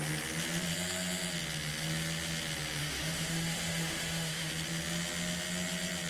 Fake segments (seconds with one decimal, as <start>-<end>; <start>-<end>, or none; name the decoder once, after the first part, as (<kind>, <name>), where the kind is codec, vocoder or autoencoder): 2.8-4.5 (autoencoder, DAC-VAE)